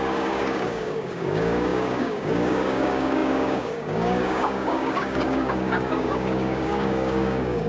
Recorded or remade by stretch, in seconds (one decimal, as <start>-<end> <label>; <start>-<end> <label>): 0.0-7.7 remade